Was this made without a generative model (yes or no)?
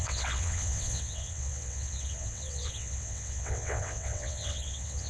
no